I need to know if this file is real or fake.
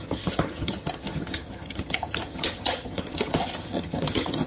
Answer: fake